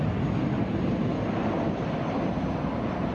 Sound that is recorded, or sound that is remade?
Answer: recorded